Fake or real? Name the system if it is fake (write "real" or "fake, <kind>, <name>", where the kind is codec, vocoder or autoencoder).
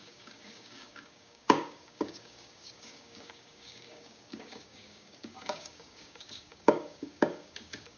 fake, codec, DAC